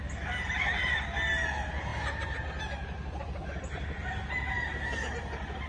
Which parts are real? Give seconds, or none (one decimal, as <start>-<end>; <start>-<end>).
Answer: 0.0-5.7

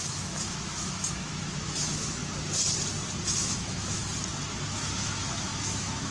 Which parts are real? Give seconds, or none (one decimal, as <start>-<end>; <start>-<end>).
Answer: 2.2-3.2; 4.0-4.6

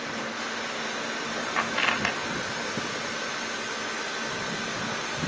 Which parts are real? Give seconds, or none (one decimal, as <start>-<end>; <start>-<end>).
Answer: 0.0-5.3

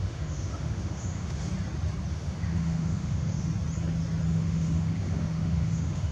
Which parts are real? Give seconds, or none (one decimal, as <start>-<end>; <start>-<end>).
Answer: 1.5-2.1; 3.5-4.3